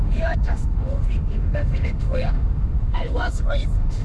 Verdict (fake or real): fake